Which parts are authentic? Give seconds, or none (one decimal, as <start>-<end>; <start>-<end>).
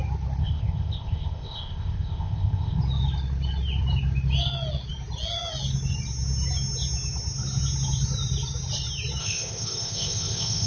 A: 0.0-0.4; 2.8-9.2